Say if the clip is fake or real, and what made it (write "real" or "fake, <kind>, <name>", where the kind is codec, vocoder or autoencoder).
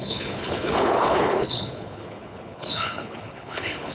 fake, codec, HILCodec